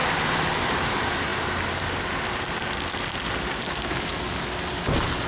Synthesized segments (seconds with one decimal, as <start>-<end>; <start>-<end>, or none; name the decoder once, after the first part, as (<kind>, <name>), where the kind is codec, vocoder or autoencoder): none